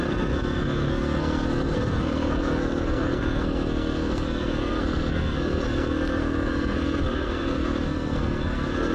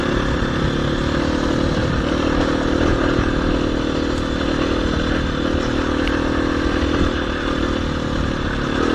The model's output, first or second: first